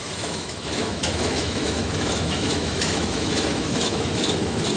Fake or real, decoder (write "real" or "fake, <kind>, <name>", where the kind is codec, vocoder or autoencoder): fake, autoencoder, DAC-VAE